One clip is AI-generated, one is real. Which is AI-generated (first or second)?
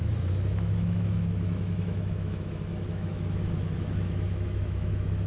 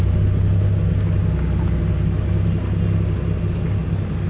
first